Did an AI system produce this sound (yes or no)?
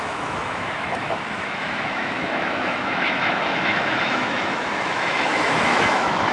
yes